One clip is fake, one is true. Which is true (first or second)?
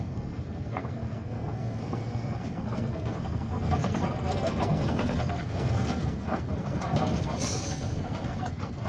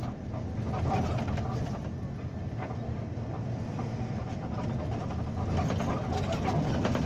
second